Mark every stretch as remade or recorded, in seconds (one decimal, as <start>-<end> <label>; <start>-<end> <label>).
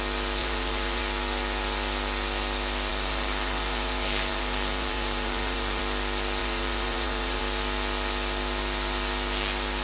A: 0.0-0.4 recorded; 0.4-1.0 remade; 1.0-2.9 recorded; 2.9-5.8 remade; 5.8-6.4 recorded; 6.4-7.4 remade; 7.4-9.8 recorded